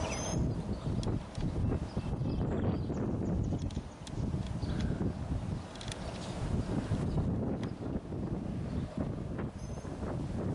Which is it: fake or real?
real